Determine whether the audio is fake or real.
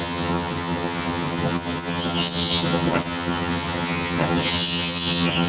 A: fake